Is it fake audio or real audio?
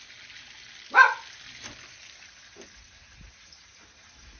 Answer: real